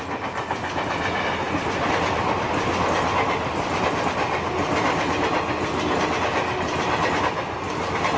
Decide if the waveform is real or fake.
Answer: real